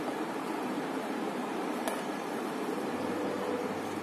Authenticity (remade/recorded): remade